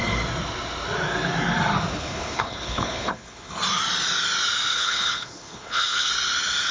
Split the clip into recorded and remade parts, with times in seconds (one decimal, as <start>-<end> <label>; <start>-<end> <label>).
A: 0.0-1.9 recorded; 1.9-3.5 remade; 3.5-4.7 recorded; 4.7-6.1 remade; 6.1-6.7 recorded